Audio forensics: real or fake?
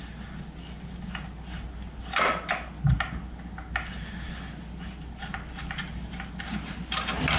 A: real